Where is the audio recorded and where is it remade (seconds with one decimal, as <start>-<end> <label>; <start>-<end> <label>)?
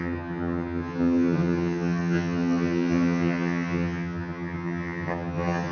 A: 0.0-5.7 remade